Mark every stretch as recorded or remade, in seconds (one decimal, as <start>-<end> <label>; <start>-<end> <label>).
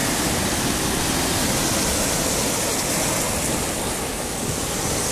0.0-4.1 recorded; 4.1-5.1 remade